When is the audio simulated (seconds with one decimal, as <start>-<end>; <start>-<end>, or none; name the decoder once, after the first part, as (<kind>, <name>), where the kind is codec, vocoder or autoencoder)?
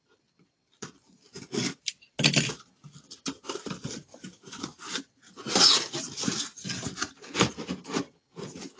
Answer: 4.1-4.6 (autoencoder, DAC-VAE)